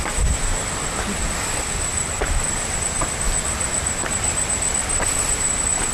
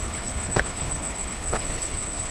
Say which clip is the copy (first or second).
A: second